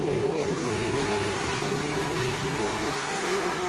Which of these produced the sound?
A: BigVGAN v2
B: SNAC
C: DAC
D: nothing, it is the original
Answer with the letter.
B